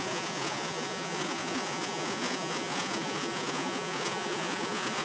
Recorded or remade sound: remade